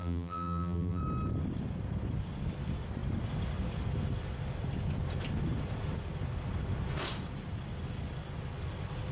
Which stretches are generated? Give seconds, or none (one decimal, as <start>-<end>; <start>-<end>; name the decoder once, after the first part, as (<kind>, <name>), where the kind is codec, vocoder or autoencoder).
0.0-1.0 (vocoder, BigVGAN v2)